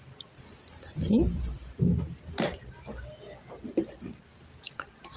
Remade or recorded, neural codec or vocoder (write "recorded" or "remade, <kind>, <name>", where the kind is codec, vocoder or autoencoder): recorded